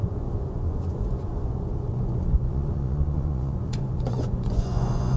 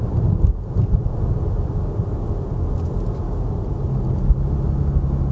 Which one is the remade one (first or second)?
first